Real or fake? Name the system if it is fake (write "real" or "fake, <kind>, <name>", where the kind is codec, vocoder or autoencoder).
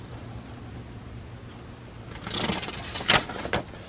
real